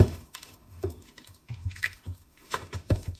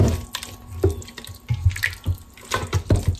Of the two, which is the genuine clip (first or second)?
second